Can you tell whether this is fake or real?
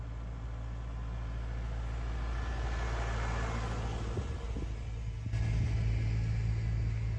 real